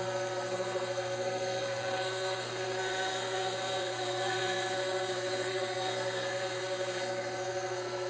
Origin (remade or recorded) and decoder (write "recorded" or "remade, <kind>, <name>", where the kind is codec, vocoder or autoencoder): remade, codec, SNAC